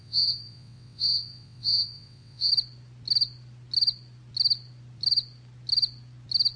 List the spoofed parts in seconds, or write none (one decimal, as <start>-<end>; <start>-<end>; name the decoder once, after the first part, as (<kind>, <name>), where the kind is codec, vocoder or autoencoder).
0.0-2.5 (vocoder, WaveNeXt)